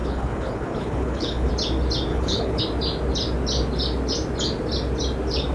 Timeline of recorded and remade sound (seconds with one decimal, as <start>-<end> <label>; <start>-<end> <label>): 0.0-1.5 remade; 1.5-2.1 recorded; 2.1-2.6 remade; 2.6-5.5 recorded